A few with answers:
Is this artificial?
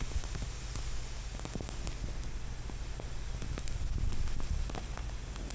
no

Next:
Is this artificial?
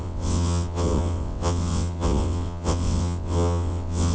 yes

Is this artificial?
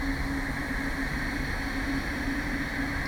no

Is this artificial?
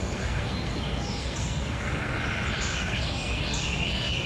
yes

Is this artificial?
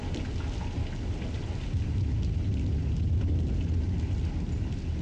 no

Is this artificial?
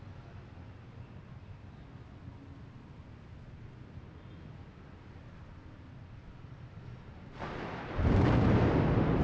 no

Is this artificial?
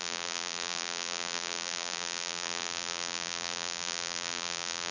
yes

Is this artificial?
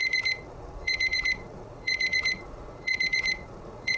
yes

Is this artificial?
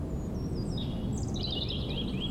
no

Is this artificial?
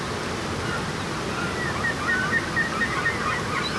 no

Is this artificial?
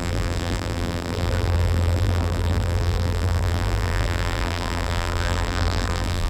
yes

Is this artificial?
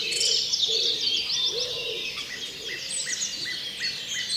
no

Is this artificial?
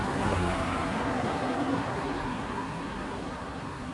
yes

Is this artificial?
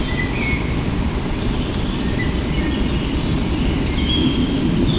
no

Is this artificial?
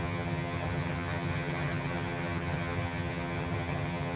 yes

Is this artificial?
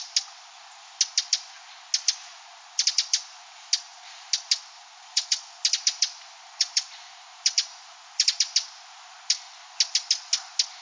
no